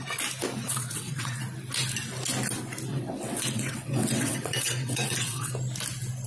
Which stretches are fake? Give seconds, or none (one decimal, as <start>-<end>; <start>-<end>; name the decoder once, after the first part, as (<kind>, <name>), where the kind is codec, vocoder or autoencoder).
0.6-1.4 (vocoder, WaveNeXt); 2.9-5.5